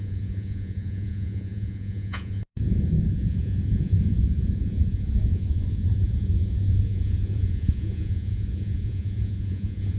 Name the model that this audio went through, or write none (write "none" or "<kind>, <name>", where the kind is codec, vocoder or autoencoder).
vocoder, Vocos